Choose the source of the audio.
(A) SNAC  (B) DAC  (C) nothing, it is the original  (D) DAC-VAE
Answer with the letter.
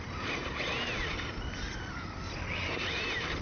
C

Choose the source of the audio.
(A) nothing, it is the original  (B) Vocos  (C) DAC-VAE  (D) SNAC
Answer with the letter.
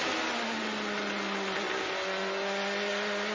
A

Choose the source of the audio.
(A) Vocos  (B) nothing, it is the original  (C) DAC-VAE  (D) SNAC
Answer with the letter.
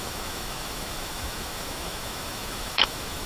C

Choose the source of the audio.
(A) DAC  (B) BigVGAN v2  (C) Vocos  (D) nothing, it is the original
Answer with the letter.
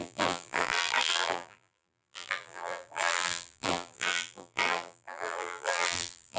B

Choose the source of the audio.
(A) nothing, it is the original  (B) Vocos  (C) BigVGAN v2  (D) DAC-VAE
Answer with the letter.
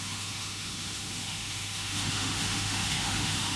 D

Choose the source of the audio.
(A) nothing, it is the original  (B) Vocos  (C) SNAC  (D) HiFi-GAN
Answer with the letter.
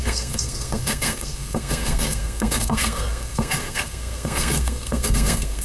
C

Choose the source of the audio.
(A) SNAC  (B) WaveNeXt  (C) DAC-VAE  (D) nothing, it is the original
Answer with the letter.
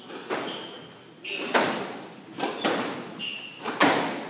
D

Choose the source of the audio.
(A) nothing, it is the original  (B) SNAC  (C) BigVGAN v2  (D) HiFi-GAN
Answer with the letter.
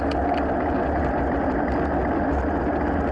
A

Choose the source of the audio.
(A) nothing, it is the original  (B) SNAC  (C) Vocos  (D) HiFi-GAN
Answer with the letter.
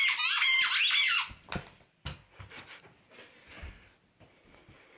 A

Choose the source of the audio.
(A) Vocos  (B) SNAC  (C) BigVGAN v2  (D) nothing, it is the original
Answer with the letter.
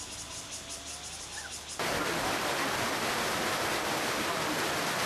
D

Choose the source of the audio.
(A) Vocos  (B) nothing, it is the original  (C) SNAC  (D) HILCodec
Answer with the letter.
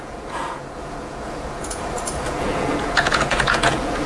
A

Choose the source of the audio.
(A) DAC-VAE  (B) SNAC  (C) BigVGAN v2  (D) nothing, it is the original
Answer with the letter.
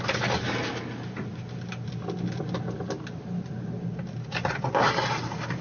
D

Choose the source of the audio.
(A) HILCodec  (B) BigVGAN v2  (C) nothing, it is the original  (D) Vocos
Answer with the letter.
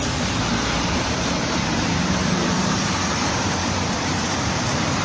B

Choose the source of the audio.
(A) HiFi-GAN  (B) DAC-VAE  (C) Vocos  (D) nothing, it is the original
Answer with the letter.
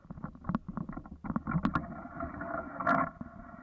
D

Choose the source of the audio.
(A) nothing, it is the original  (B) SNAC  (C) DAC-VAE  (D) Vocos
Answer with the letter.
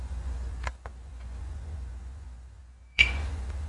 D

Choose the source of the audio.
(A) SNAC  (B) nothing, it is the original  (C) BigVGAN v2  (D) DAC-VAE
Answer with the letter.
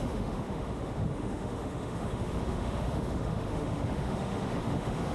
D